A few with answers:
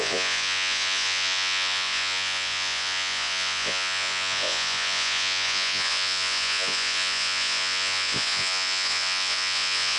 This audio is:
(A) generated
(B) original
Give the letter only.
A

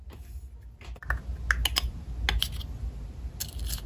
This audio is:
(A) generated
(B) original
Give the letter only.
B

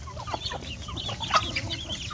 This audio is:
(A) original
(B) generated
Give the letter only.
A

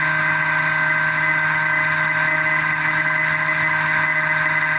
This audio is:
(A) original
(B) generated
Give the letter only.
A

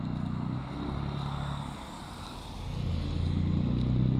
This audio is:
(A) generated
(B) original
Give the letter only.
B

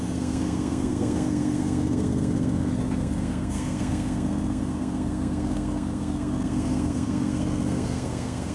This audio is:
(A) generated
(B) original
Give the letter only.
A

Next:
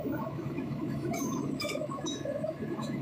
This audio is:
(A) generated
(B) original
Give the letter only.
A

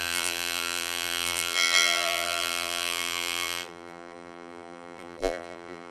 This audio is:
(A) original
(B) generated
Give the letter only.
B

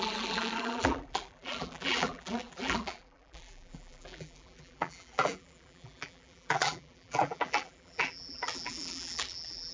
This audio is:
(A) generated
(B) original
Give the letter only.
A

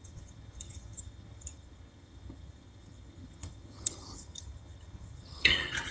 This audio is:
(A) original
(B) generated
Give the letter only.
B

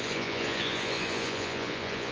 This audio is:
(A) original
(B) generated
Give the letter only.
B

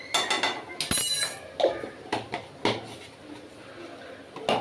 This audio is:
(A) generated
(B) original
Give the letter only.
B